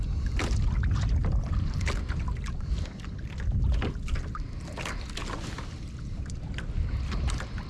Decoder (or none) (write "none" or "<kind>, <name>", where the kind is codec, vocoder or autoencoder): none